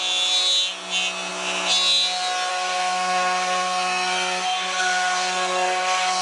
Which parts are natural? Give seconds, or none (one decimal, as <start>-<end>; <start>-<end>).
0.0-2.5